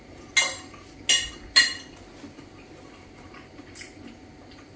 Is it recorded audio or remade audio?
recorded